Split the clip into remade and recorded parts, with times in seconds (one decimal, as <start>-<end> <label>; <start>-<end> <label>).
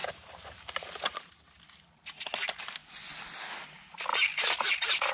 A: 0.0-1.4 remade; 1.4-5.1 recorded